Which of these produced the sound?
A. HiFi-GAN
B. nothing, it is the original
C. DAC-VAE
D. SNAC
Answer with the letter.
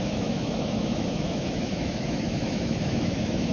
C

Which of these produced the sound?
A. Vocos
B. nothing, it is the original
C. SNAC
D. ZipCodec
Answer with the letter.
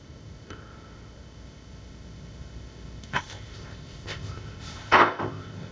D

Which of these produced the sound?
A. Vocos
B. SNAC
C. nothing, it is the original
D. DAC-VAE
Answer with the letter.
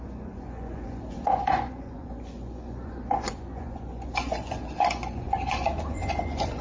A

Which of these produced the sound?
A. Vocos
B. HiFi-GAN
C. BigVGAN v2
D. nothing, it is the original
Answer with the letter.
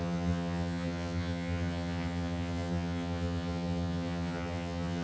B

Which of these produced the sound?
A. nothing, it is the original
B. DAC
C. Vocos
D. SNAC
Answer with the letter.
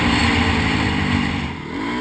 A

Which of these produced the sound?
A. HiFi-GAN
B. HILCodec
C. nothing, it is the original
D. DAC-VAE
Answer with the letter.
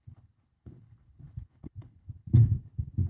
B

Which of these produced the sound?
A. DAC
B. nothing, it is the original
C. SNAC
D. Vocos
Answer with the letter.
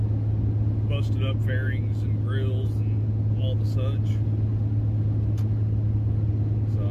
B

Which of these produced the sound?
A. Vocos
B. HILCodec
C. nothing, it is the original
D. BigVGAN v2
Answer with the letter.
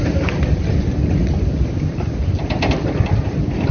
C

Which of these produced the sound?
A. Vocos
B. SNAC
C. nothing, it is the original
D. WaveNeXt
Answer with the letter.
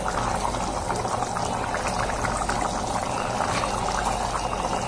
C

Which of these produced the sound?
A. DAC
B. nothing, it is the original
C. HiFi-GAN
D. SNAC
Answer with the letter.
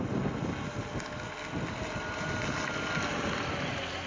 B